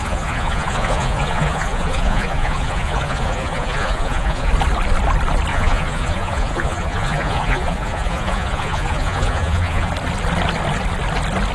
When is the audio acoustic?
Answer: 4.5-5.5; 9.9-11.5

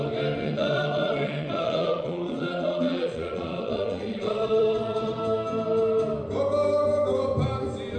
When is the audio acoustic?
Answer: 0.0-0.4; 5.2-8.0